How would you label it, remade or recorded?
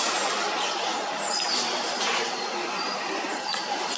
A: remade